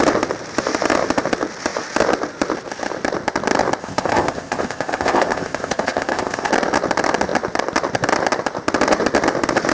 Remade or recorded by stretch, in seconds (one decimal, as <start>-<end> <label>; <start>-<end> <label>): 0.0-3.8 recorded; 3.8-6.5 remade; 6.5-9.7 recorded